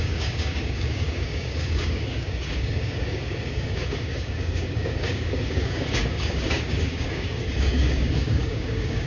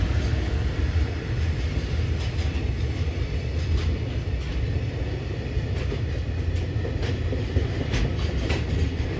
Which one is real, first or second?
second